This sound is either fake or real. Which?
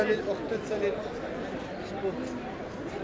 real